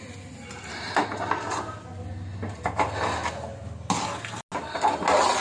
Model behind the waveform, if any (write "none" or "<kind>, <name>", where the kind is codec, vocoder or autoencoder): none